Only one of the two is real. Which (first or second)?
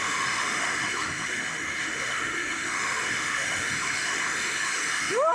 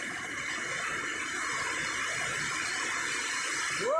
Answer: second